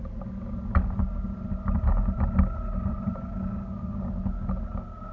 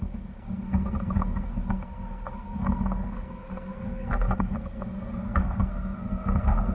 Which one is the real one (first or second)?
first